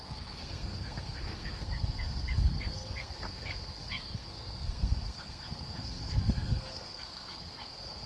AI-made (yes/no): yes